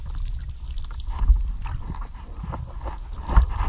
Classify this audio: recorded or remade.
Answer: recorded